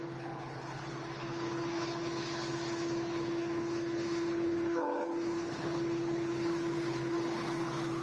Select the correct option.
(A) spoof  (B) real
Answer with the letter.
A